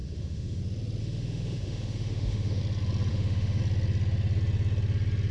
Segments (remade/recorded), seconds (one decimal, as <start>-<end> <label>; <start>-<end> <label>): 0.0-0.6 remade; 0.6-1.0 recorded; 1.0-2.6 remade; 2.6-3.1 recorded; 3.1-3.6 remade; 3.6-5.3 recorded